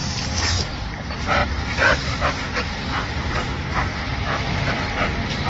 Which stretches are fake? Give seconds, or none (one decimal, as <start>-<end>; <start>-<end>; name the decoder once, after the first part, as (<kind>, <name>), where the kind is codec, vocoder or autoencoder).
1.4-4.7 (vocoder, BigVGAN v2)